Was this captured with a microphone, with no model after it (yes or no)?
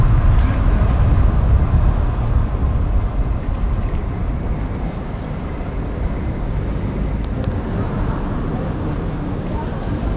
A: yes